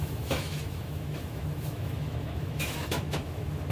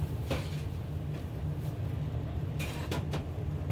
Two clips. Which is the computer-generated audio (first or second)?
first